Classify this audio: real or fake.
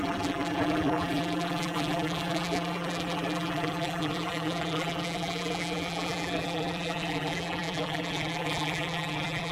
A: fake